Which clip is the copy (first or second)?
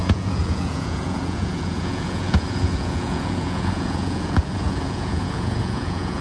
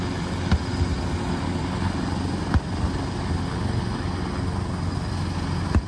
first